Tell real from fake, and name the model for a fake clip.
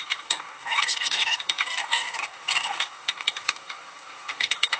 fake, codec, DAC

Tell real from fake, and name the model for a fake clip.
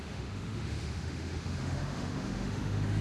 fake, autoencoder, DAC-VAE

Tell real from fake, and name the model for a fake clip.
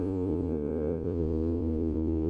fake, vocoder, Vocos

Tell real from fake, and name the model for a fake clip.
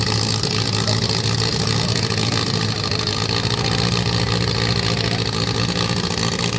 real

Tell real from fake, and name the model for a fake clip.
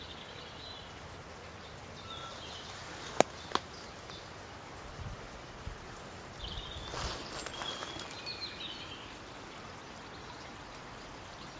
real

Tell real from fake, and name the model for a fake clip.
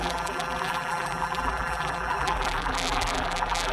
fake, vocoder, BigVGAN v2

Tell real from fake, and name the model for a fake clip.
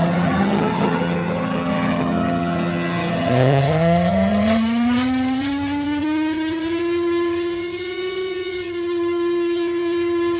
fake, vocoder, HiFi-GAN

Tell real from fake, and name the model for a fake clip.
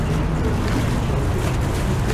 real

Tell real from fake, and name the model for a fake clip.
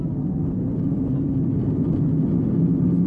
real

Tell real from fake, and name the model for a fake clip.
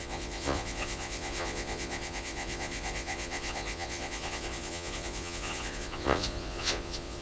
fake, vocoder, Vocos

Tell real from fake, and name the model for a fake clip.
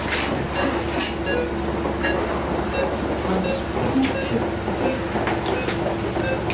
real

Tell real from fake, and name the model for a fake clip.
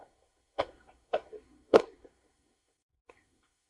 fake, codec, SNAC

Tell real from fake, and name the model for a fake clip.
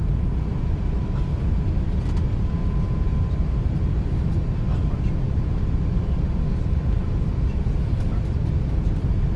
real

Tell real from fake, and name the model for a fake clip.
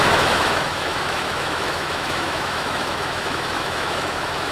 fake, autoencoder, DAC-VAE